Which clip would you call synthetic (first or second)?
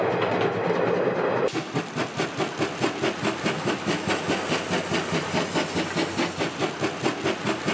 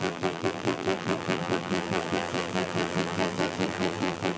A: second